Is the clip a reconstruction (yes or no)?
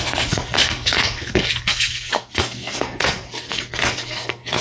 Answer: yes